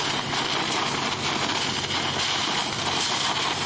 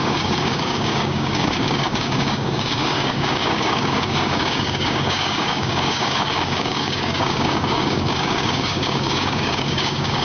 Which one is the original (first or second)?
first